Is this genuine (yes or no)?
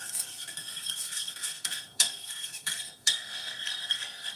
no